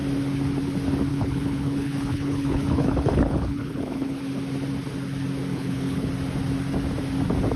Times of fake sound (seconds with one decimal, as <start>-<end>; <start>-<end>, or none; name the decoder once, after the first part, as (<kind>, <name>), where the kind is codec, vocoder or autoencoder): 1.1-4.2 (codec, HILCodec); 5.5-6.1